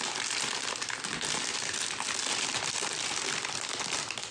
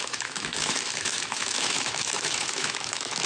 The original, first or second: first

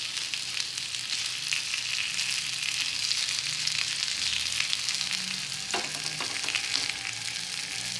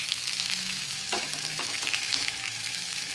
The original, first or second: first